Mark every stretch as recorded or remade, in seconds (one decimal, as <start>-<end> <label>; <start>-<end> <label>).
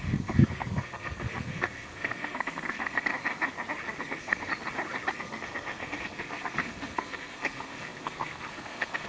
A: 0.0-3.1 remade; 3.1-4.0 recorded; 4.0-4.5 remade; 4.5-5.1 recorded; 5.1-9.1 remade